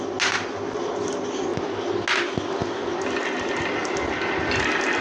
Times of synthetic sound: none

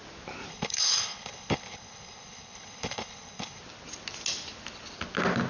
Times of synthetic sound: 0.5-3.6 (codec, HILCodec)

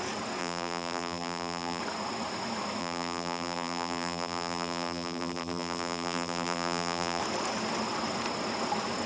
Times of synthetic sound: 0.4-1.8 (vocoder, BigVGAN v2); 2.8-7.2

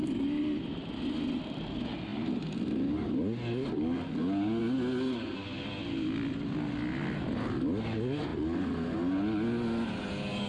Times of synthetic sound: none

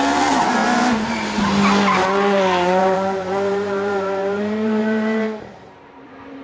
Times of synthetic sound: 0.0-0.6 (vocoder, BigVGAN v2); 2.8-6.4

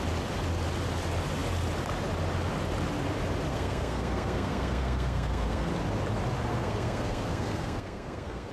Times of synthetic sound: 3.5-5.7 (codec, SNAC); 6.5-8.5